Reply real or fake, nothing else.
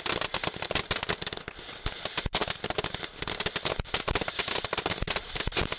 real